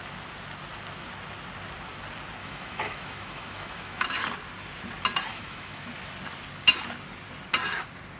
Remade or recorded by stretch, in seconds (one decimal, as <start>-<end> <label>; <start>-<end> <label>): 0.0-2.4 recorded; 2.4-4.1 remade; 4.1-5.3 recorded; 5.3-5.9 remade; 5.9-8.2 recorded